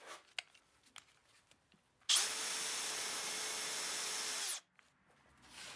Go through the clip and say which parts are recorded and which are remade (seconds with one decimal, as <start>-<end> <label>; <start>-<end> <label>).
0.0-5.8 recorded

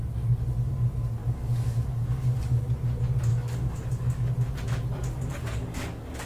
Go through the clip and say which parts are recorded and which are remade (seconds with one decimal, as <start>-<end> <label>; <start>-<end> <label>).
0.0-1.2 recorded; 1.2-2.6 remade; 2.6-3.3 recorded; 3.3-4.3 remade; 4.3-5.3 recorded; 5.3-6.3 remade

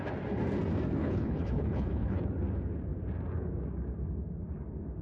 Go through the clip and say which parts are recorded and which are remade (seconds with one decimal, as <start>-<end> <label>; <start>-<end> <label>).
0.0-1.0 recorded; 1.0-2.2 remade; 2.2-5.0 recorded

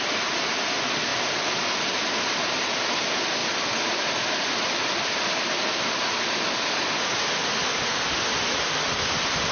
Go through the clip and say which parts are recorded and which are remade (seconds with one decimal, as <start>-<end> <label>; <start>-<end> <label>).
0.0-3.4 recorded; 3.4-3.9 remade; 3.9-9.5 recorded

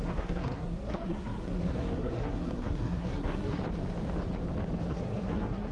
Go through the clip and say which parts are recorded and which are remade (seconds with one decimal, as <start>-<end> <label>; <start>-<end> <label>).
0.0-3.6 remade; 3.6-4.9 recorded; 4.9-5.7 remade

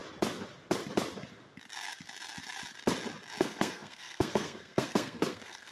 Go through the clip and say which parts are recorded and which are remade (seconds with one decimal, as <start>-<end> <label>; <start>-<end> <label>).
0.0-3.4 recorded; 3.4-5.7 remade

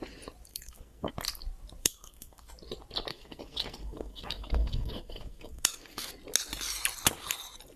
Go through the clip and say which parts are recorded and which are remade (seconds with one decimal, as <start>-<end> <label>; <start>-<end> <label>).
0.0-0.5 recorded; 0.5-1.1 remade; 1.1-1.8 recorded; 1.8-2.5 remade; 2.5-3.1 recorded; 3.1-6.1 remade; 6.1-7.8 recorded

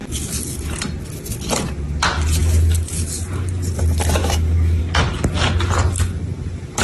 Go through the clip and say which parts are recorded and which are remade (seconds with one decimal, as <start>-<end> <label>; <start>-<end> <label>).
0.0-4.2 recorded; 4.2-4.8 remade; 4.8-6.8 recorded